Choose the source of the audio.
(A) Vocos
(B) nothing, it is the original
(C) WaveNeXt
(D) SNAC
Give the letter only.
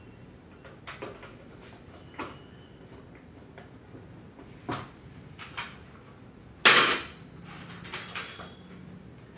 B